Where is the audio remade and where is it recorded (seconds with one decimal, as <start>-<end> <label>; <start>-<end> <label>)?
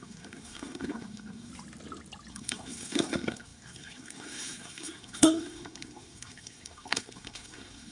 0.0-1.5 remade; 1.5-2.3 recorded; 2.3-7.9 remade